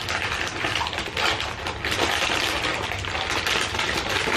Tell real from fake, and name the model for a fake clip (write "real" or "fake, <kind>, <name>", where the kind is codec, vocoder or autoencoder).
real